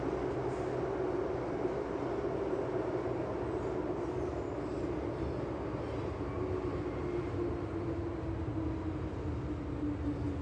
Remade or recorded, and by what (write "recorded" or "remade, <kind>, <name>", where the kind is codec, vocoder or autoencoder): recorded